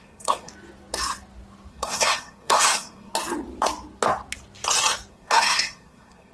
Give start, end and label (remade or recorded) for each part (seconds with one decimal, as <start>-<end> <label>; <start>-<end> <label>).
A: 0.0-0.5 remade; 0.5-1.7 recorded; 1.7-3.1 remade; 3.1-5.1 recorded; 5.1-6.3 remade